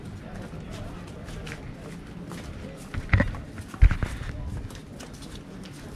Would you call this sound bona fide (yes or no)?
yes